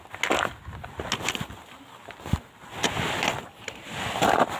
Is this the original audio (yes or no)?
yes